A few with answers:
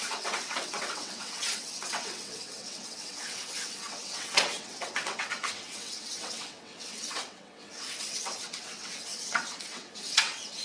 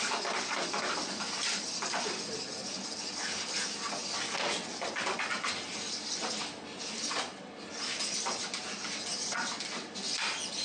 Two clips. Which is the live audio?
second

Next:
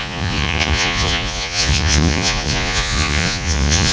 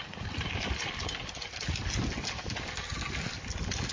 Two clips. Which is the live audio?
second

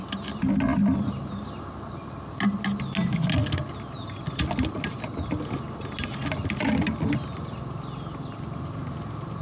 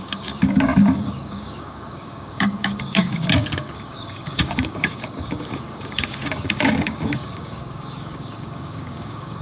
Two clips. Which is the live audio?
first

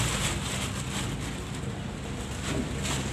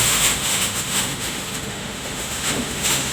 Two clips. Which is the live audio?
first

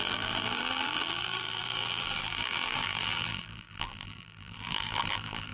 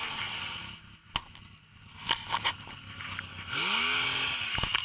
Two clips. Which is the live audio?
second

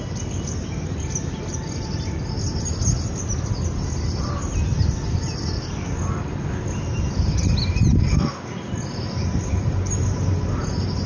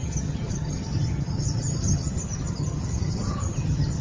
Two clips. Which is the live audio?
first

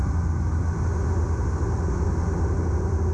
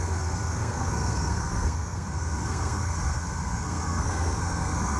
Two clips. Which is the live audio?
first